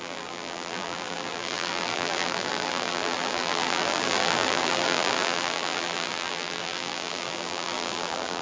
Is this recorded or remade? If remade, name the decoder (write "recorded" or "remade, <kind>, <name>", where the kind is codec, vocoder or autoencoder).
remade, vocoder, BigVGAN v2